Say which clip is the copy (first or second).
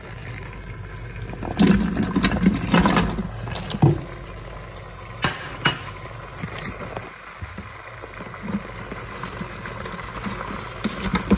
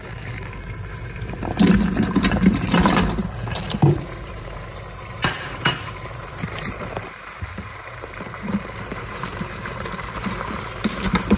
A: second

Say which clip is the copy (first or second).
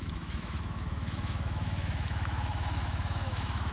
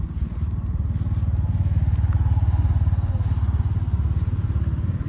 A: first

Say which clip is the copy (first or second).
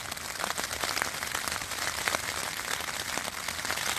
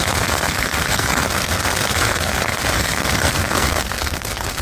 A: second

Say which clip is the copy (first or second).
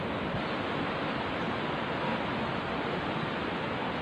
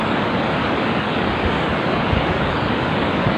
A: second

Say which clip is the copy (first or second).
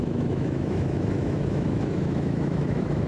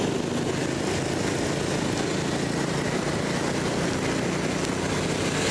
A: first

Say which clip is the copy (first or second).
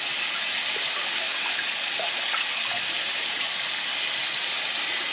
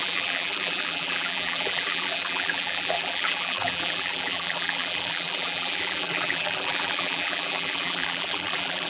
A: second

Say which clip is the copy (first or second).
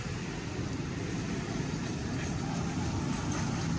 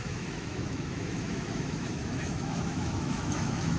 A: second